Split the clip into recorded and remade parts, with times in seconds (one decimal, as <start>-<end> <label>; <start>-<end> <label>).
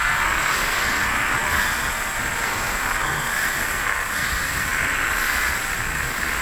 0.0-6.4 remade